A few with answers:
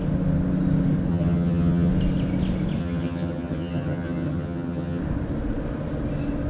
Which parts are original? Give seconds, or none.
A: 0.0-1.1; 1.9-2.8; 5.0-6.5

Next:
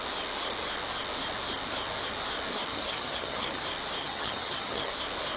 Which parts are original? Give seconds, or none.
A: 0.0-2.7; 3.6-4.0; 4.9-5.4

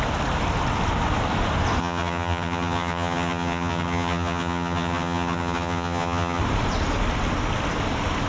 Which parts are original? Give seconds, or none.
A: 0.0-1.8; 6.4-8.3